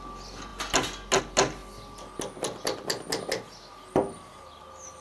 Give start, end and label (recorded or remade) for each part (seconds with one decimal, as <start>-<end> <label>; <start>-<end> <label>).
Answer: 0.0-5.0 recorded